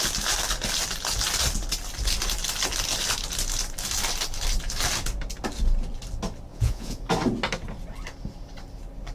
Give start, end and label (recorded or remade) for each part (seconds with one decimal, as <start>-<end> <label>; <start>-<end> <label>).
0.0-6.5 recorded; 6.5-7.0 remade; 7.0-9.1 recorded